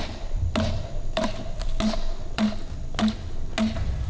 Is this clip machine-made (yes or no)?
no